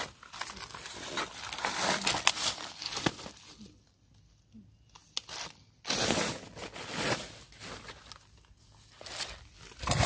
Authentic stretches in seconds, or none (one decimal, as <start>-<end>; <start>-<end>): 0.0-10.1